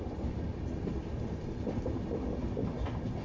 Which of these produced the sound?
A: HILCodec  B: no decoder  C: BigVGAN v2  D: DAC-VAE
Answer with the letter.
C